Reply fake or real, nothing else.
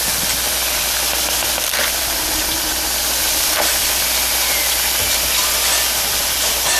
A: fake